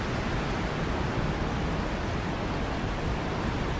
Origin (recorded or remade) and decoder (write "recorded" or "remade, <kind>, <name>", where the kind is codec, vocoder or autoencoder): recorded